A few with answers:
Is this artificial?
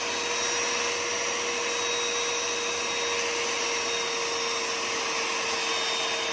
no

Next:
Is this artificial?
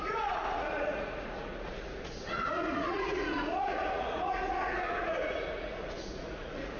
yes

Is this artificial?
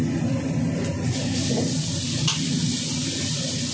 no